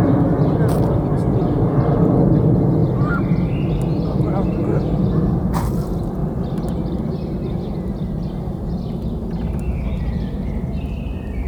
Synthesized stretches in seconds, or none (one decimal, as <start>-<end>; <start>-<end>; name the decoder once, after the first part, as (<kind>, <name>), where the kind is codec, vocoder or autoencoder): none